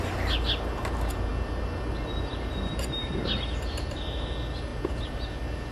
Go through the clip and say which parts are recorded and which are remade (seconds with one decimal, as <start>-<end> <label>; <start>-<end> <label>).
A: 0.0-2.3 recorded; 2.3-3.1 remade; 3.1-4.7 recorded; 4.7-5.3 remade; 5.3-5.7 recorded